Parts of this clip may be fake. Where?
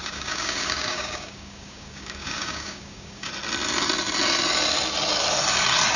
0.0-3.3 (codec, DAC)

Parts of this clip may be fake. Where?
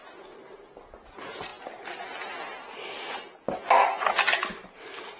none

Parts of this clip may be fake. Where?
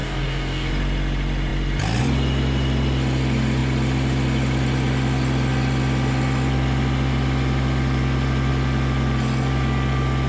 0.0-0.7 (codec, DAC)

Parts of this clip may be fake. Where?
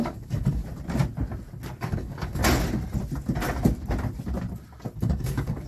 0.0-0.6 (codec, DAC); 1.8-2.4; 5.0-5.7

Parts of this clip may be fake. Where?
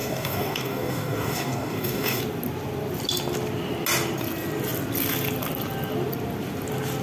0.0-2.2 (codec, DAC)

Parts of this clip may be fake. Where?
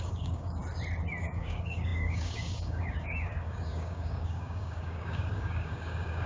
0.0-0.6 (codec, DAC); 1.2-6.3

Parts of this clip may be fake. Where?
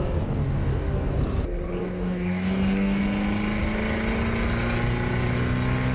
0.4-1.2 (codec, DAC); 1.8-3.0